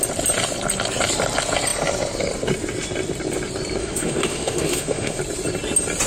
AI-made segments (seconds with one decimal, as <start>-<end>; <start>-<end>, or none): 3.8-5.2